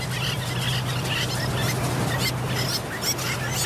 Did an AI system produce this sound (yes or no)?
no